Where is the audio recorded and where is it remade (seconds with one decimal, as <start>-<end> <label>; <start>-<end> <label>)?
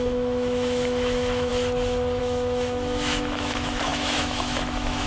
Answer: 0.0-1.5 remade; 1.5-2.2 recorded; 2.2-5.1 remade